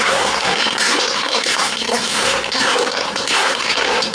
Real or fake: fake